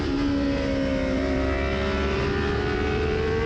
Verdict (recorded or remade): recorded